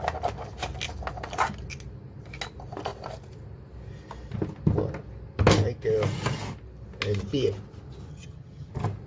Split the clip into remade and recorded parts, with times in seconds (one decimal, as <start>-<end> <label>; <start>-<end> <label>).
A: 0.0-8.1 recorded; 8.1-8.7 remade; 8.7-9.1 recorded